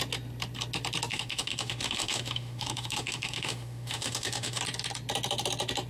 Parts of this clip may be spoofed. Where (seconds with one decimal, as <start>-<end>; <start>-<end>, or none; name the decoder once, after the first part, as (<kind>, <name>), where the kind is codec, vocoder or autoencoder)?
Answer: 1.1-4.6 (autoencoder, DAC-VAE)